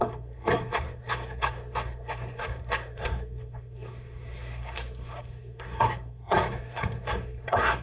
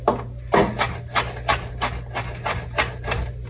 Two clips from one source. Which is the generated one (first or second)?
first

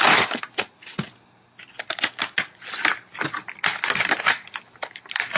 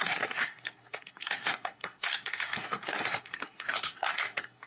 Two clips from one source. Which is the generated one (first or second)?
second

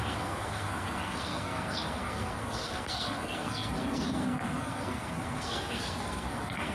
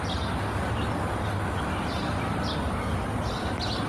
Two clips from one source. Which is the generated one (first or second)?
first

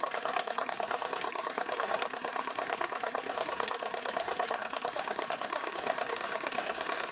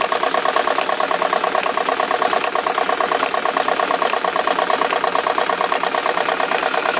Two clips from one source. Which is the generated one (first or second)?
first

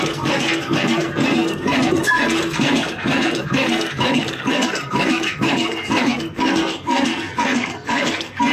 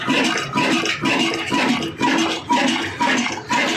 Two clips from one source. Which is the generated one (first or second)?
first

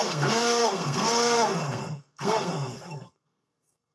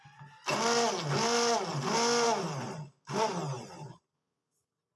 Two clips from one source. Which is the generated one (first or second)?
first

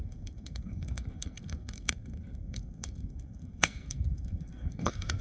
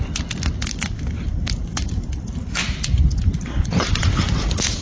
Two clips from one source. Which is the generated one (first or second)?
first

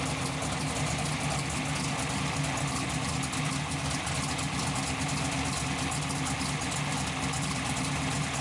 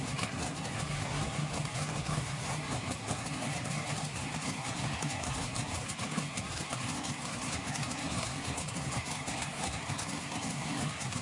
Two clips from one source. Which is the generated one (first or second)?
second